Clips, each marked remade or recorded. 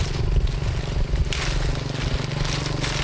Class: recorded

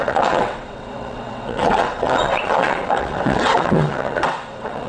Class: remade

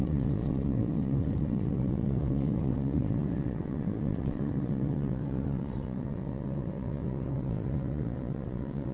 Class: remade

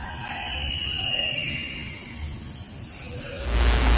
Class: recorded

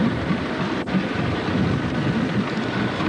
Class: recorded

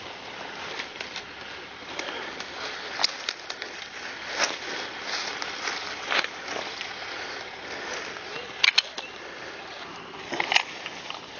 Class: recorded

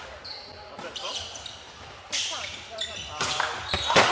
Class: recorded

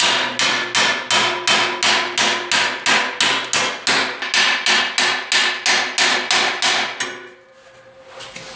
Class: recorded